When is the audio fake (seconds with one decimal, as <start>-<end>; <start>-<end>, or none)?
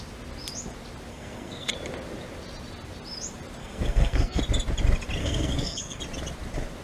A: 1.1-1.7; 3.6-4.4; 5.2-6.0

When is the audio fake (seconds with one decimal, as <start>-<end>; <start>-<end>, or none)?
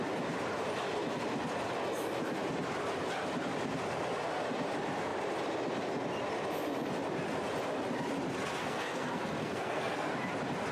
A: 8.6-10.1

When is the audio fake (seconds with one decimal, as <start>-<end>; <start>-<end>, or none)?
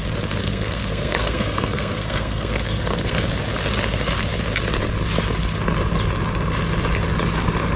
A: 0.4-3.3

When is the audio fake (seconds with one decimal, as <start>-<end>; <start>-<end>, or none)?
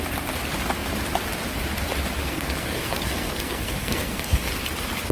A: 2.2-4.5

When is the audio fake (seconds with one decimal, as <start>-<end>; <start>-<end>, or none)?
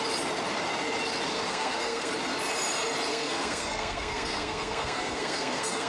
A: 1.5-2.1; 3.1-5.9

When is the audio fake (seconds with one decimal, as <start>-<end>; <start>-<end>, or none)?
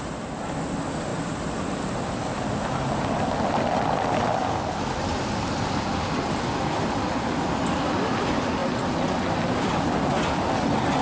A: none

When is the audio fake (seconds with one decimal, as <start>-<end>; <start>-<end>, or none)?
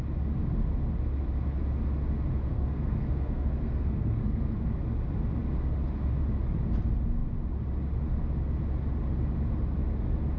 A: 2.5-4.5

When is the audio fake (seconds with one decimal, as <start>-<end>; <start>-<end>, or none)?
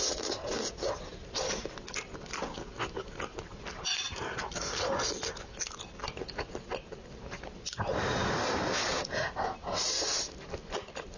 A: none